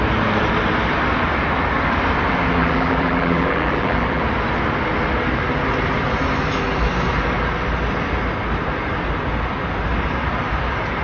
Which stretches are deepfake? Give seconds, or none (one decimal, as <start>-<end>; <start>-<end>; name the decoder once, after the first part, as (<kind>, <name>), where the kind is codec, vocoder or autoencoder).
2.6-4.2 (vocoder, BigVGAN v2)